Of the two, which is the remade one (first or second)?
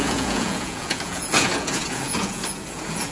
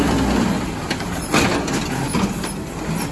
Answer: first